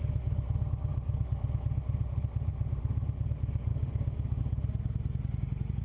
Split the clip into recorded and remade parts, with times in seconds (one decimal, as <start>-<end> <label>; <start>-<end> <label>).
0.0-0.9 recorded; 0.9-1.5 remade; 1.5-3.7 recorded; 3.7-4.4 remade; 4.4-5.8 recorded